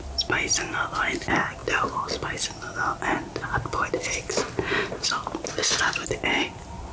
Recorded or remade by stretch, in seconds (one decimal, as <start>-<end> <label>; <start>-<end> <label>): 0.0-6.9 recorded